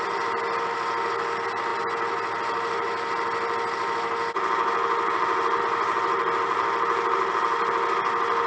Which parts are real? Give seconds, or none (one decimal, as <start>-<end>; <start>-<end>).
0.0-8.5